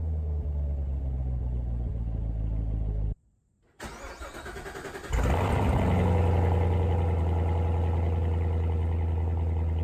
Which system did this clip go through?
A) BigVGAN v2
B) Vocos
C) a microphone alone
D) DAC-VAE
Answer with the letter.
C